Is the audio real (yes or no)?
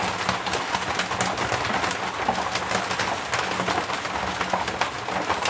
yes